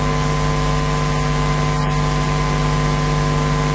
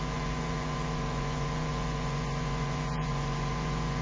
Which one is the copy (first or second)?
second